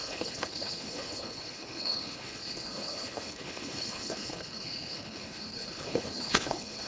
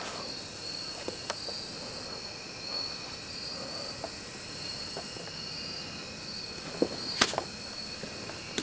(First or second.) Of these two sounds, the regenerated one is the first